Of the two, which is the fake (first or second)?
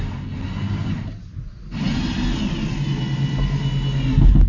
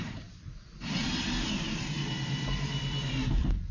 second